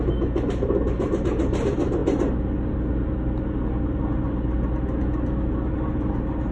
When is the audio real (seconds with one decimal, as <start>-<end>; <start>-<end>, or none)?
0.0-6.5